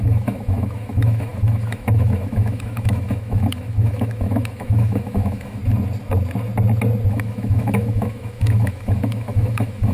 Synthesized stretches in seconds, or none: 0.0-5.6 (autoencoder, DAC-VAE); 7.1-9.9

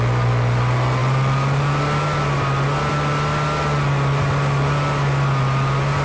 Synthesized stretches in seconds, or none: none